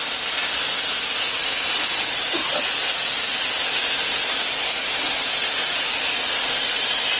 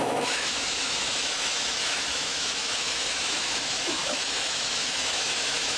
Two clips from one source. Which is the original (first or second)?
first